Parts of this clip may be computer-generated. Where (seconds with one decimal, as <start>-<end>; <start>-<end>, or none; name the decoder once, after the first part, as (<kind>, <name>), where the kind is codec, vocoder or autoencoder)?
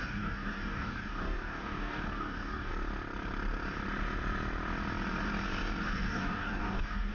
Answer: 0.0-2.7 (codec, DAC); 6.0-7.1